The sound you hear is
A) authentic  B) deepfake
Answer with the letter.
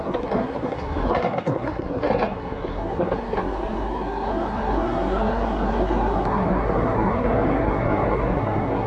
B